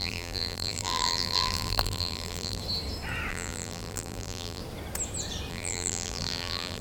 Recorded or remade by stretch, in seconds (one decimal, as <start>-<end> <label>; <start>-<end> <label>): 0.0-2.6 remade; 2.6-3.3 recorded; 3.3-4.6 remade; 4.6-5.5 recorded; 5.5-6.8 remade